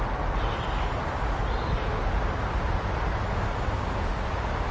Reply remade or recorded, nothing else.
recorded